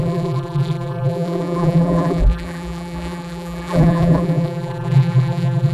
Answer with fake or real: fake